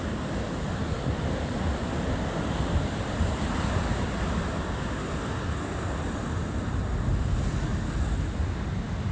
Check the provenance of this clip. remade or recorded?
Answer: recorded